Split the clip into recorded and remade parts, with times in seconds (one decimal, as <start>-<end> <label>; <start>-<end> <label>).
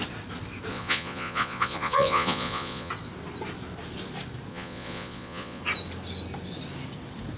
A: 0.0-0.7 recorded; 0.7-2.9 remade; 2.9-4.5 recorded; 4.5-5.6 remade; 5.6-7.4 recorded